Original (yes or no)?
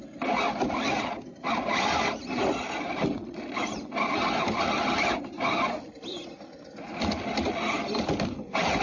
yes